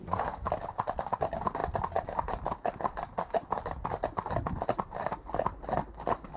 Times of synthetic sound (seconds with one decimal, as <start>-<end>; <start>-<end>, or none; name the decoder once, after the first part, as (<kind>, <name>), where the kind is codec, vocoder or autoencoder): none